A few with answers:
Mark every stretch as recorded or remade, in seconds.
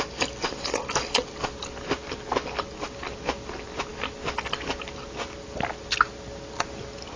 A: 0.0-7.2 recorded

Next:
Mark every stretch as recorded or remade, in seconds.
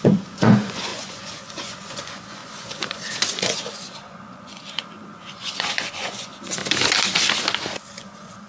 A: 0.0-6.6 remade; 6.6-7.9 recorded; 7.9-8.5 remade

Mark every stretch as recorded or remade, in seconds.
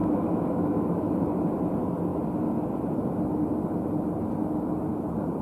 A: 0.0-1.2 remade; 1.2-5.4 recorded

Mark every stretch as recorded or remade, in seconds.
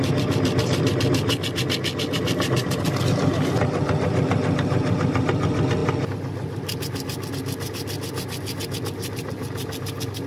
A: 0.0-10.3 recorded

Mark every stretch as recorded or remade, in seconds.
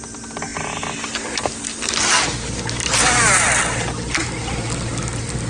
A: 0.0-5.5 recorded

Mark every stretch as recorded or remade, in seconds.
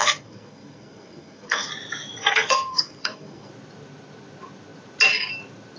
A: 0.0-1.7 remade; 1.7-2.2 recorded; 2.2-3.5 remade; 3.5-5.8 recorded